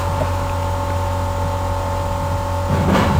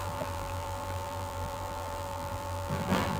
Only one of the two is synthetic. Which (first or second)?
second